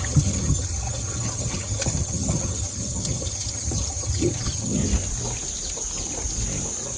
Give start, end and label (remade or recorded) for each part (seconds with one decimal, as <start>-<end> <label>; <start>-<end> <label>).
0.0-4.8 remade; 4.8-7.0 recorded